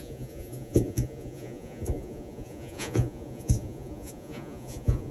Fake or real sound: fake